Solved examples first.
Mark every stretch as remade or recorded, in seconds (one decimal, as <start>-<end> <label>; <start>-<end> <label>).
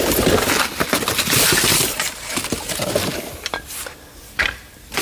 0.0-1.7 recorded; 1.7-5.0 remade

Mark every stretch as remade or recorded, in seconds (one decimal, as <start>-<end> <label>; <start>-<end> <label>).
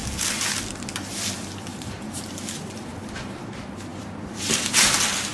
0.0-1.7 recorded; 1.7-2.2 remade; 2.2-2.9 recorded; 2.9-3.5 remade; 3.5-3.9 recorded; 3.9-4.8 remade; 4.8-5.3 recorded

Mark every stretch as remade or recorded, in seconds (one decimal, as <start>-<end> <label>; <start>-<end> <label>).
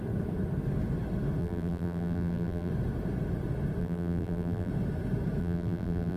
0.0-1.4 recorded; 1.4-2.7 remade; 2.7-3.8 recorded; 3.8-4.7 remade; 4.7-5.4 recorded; 5.4-6.2 remade